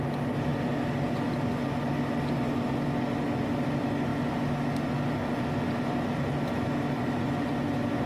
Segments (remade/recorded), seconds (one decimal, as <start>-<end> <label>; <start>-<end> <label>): 0.0-8.1 recorded